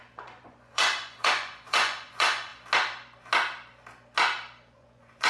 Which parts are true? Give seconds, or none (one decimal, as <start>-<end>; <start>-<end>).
2.5-4.7